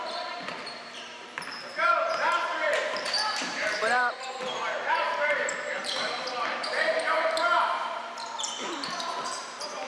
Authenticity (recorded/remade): remade